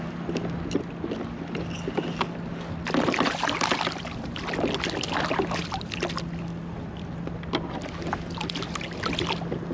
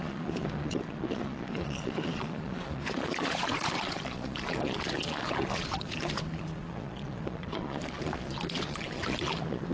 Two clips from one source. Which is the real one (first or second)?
first